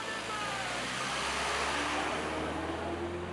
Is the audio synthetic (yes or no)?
no